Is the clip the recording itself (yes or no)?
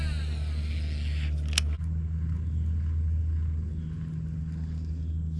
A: yes